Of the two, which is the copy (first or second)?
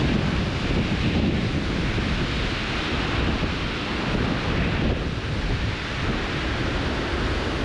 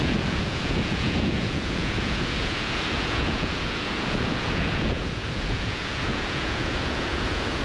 second